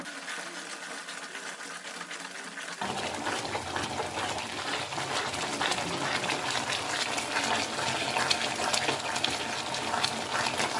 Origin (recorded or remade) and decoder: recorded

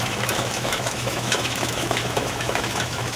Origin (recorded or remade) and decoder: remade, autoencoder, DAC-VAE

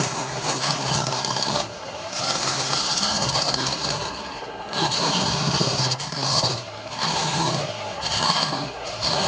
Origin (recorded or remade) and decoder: remade, codec, SNAC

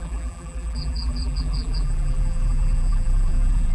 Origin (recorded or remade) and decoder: remade, vocoder, BigVGAN v2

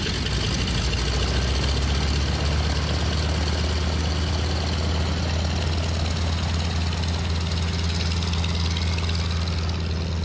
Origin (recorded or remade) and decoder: recorded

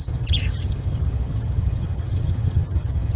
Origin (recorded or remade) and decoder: remade, vocoder, HiFi-GAN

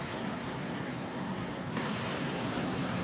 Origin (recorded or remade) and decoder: remade, codec, SNAC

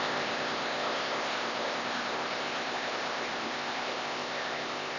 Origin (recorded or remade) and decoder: remade, codec, ZipCodec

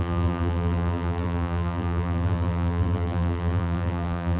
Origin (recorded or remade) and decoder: remade, vocoder, BigVGAN v2